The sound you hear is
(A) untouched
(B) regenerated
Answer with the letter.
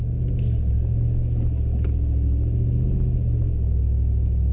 A